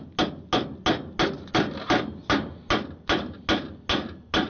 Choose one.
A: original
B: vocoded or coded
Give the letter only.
A